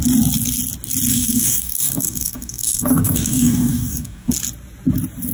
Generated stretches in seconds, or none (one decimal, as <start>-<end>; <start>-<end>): 1.1-4.3